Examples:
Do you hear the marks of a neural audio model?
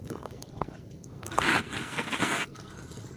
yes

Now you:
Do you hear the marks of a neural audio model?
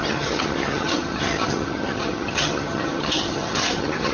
yes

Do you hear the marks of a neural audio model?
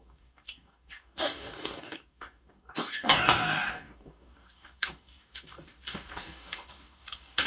yes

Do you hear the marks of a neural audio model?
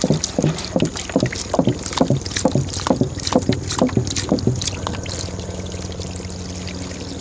no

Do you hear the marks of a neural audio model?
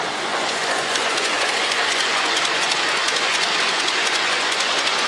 yes